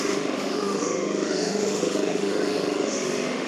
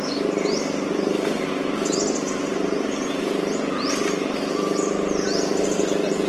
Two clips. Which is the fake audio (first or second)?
first